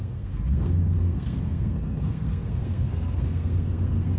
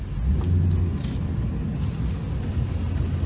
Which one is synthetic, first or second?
first